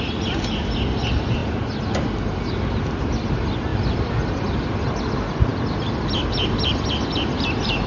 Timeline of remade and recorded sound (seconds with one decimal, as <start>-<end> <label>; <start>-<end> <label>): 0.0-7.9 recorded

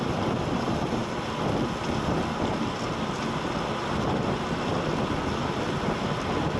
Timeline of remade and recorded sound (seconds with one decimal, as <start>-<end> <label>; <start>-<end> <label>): 0.0-6.6 recorded

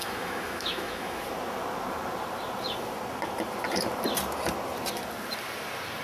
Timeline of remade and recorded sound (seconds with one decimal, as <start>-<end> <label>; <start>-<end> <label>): 0.0-1.2 remade; 1.2-6.0 recorded

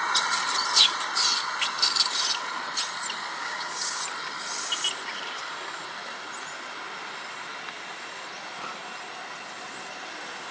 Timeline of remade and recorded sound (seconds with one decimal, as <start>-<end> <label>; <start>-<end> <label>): 0.0-3.4 recorded; 3.4-4.0 remade; 4.0-10.5 recorded

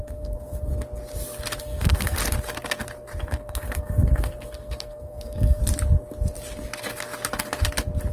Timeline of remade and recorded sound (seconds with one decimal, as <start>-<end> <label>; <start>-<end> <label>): 0.0-0.7 remade; 0.7-1.6 recorded; 1.6-2.2 remade; 2.2-3.2 recorded; 3.2-5.6 remade; 5.6-8.1 recorded

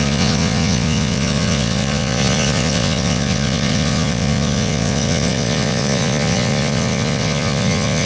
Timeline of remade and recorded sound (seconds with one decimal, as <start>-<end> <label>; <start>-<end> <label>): 0.0-8.1 remade

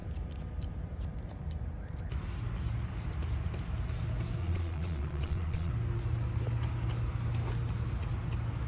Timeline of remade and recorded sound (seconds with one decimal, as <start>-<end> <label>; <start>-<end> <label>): 0.0-4.4 recorded; 4.4-5.7 remade; 5.7-8.7 recorded

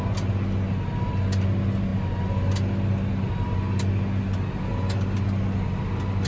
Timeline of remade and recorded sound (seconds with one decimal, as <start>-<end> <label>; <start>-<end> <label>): 0.0-6.3 recorded